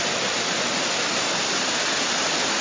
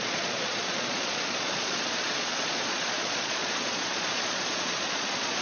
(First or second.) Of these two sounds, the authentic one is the first